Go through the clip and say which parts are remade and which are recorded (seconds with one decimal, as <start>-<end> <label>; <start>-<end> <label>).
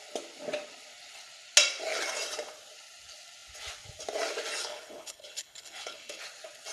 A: 0.0-4.6 recorded; 4.6-6.2 remade; 6.2-6.7 recorded